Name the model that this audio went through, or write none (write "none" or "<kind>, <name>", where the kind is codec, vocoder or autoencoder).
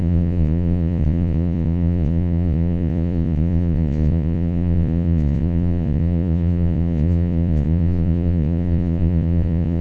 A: vocoder, Vocos